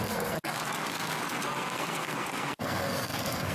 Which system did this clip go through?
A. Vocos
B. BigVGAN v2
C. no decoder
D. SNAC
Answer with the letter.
D